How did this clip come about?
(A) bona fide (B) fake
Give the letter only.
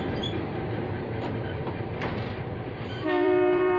B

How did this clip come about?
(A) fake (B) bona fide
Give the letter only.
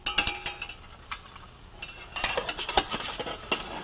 B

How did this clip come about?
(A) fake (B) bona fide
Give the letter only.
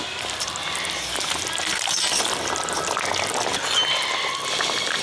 B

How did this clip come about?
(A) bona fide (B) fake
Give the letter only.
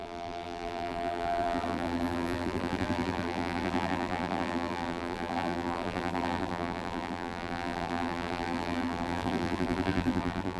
B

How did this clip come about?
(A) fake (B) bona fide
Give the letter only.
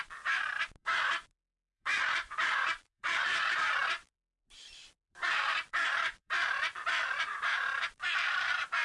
A